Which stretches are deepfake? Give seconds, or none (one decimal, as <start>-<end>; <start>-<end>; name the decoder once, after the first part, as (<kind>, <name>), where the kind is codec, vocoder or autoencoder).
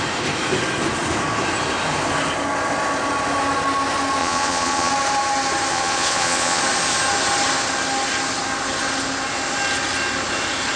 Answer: 4.2-4.9 (vocoder, Vocos); 5.7-6.6